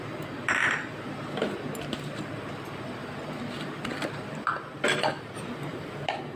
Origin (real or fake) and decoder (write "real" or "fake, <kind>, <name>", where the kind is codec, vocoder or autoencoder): fake, vocoder, BigVGAN v2